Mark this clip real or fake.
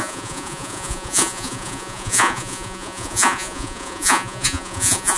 fake